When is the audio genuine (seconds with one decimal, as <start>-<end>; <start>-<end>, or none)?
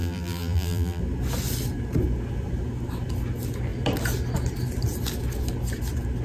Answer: 1.0-6.2